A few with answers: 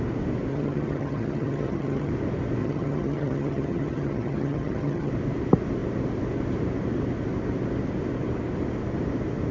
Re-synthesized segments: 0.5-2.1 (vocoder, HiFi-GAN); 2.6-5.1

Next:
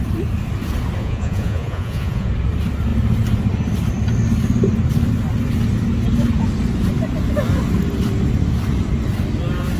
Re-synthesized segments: 1.0-2.3 (vocoder, Vocos)

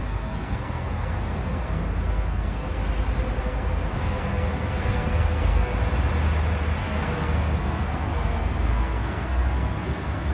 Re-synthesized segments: 0.0-2.8 (codec, SNAC); 3.4-5.7; 6.8-10.3

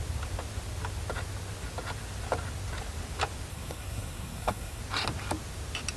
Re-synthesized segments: 3.5-4.8 (codec, SNAC)

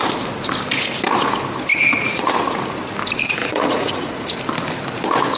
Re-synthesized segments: 1.7-2.3 (vocoder, Vocos); 3.4-4.4